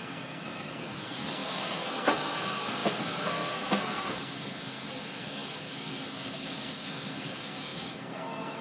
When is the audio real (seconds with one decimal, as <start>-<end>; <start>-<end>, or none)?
none

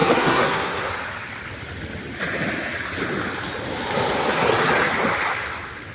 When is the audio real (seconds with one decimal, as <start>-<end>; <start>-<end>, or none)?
0.9-5.9

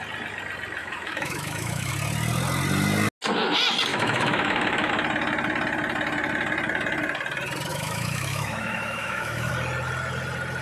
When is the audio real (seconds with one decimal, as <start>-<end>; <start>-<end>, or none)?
0.0-0.8; 1.9-3.9; 4.9-7.7; 9.5-10.6

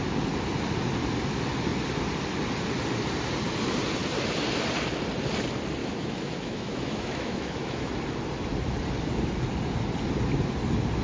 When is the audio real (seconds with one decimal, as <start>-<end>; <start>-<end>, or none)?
0.0-5.8; 7.9-11.0

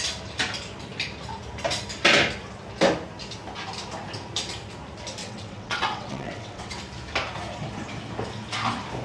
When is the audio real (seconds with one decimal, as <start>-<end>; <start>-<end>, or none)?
0.0-5.2; 6.8-9.0

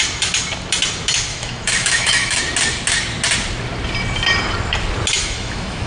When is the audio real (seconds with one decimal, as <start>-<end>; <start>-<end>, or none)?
0.0-1.3; 2.4-5.2

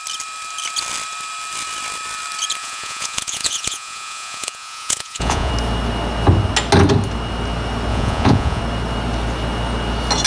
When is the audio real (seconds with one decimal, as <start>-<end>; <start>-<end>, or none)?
0.0-2.6; 5.5-7.9; 8.6-10.3

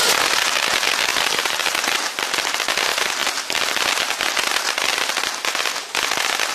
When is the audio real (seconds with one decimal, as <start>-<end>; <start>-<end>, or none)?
0.0-1.1; 1.8-6.5